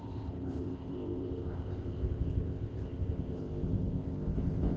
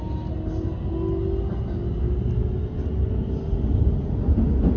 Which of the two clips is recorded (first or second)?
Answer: second